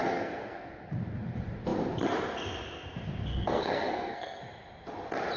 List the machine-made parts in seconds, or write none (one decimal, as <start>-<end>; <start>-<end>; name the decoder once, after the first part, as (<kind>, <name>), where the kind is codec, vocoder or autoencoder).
0.0-0.7 (codec, SNAC); 3.3-4.4